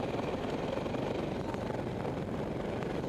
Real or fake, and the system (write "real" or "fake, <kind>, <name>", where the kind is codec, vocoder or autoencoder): real